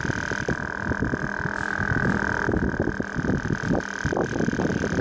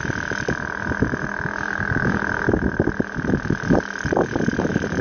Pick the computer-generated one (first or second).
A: second